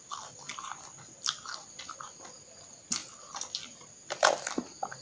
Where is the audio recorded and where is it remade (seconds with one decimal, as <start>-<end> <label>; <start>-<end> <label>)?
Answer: 0.0-5.0 recorded